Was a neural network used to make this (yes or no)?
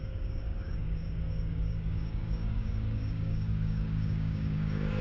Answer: yes